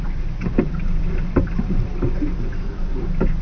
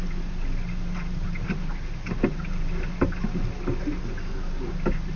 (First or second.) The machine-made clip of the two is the first